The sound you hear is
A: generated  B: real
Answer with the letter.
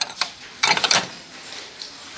A